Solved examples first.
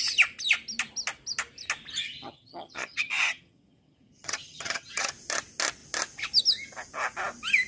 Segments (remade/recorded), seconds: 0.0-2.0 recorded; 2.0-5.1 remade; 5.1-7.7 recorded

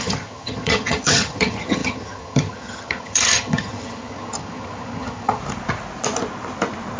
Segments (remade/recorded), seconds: 0.0-5.4 remade; 5.4-7.0 recorded